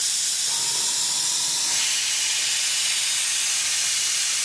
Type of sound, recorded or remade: recorded